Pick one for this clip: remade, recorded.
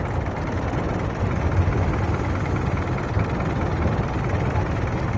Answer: recorded